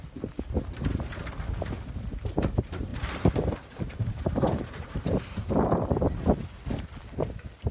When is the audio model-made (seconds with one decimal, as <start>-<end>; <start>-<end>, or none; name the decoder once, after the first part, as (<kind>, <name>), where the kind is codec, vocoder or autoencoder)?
2.9-5.5 (vocoder, BigVGAN v2)